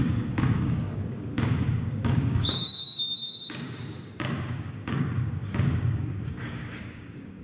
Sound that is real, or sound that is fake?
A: fake